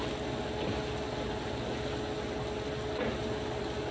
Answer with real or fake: real